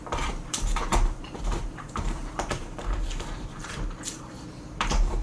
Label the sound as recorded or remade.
remade